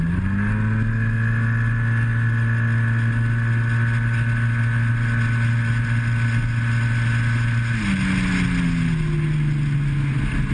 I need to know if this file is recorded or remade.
recorded